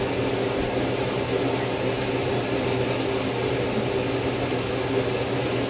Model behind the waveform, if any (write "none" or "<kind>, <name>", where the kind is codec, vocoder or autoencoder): none